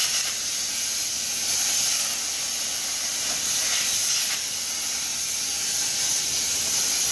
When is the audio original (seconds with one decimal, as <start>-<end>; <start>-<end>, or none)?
0.0-7.1